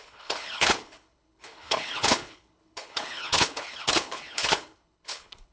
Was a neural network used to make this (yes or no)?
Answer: yes